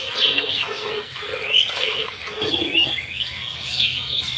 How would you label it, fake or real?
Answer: fake